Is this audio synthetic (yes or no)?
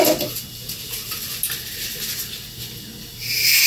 no